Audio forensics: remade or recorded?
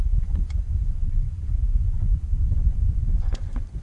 remade